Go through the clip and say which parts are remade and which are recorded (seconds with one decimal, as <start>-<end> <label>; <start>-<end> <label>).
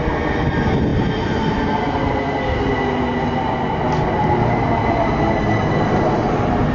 0.0-6.7 recorded